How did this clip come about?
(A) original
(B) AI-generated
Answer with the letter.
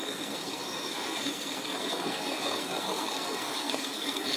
B